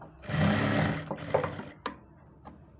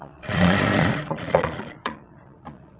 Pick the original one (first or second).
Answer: first